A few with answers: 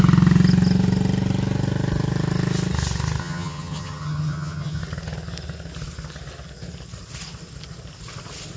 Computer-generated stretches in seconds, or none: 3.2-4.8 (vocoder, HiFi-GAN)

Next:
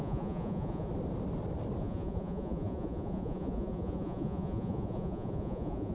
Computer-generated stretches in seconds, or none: 0.0-0.9 (vocoder, Vocos); 1.8-5.9